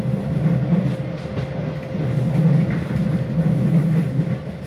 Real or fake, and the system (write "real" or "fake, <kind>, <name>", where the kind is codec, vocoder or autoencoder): real